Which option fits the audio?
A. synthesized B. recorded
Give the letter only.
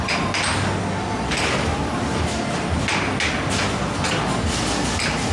B